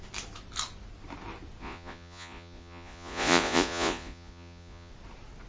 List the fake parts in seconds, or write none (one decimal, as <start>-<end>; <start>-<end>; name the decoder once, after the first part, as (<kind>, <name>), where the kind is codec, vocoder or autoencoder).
1.6-4.9 (vocoder, Vocos)